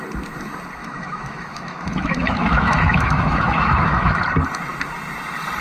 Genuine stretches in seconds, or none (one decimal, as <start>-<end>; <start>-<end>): 0.0-0.8; 4.2-5.6